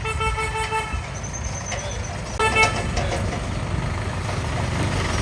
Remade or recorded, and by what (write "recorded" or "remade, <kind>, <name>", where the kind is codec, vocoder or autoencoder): recorded